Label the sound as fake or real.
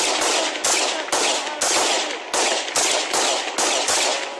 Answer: real